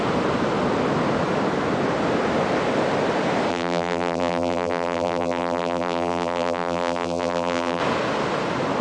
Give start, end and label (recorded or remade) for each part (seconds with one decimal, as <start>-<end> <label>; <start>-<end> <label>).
0.0-3.5 recorded; 3.5-7.8 remade; 7.8-8.8 recorded